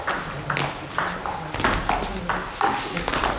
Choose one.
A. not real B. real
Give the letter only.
B